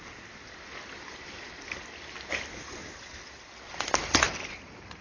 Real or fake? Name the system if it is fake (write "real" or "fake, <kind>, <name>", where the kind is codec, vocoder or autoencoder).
fake, vocoder, BigVGAN v2